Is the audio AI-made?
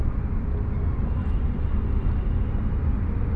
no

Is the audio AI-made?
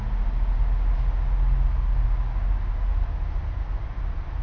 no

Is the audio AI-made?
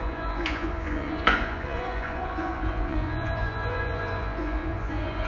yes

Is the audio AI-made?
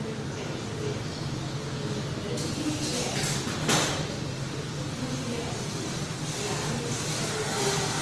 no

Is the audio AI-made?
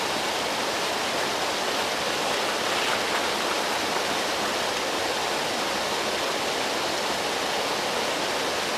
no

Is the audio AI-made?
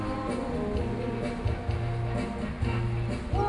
no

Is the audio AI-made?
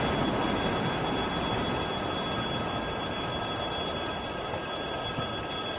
no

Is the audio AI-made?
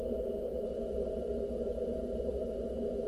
no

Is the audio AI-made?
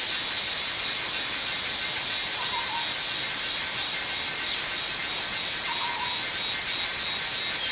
no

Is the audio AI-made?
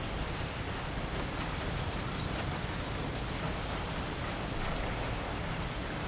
no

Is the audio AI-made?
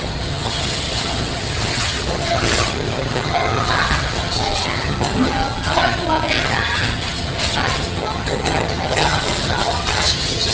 yes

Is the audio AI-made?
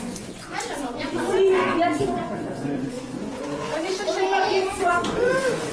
yes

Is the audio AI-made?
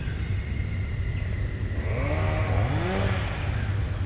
no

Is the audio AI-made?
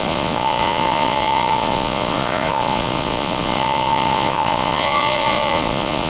yes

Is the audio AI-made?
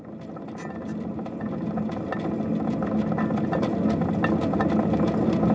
no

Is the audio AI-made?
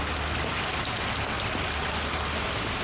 no